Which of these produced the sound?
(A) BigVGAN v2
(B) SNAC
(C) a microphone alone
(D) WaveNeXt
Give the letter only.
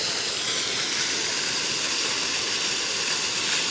C